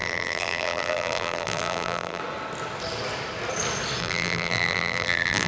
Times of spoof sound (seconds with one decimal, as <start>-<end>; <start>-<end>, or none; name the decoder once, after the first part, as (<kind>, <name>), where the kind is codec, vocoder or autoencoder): 0.0-2.2 (vocoder, BigVGAN v2); 4.0-5.5